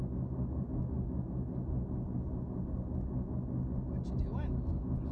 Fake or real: real